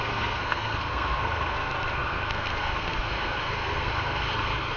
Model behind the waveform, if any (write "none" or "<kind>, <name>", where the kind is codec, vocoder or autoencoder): codec, SNAC